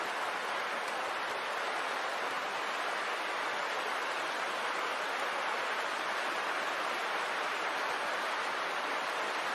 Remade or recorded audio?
recorded